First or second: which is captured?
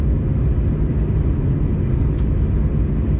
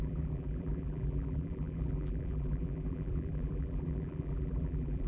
first